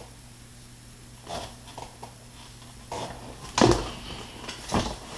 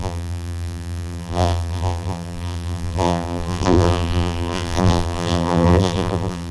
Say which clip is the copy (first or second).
second